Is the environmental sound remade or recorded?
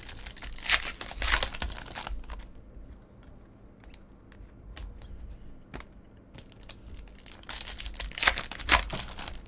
recorded